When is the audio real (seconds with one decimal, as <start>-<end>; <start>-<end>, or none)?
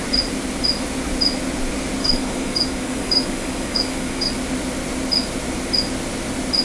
0.0-2.0; 4.3-6.6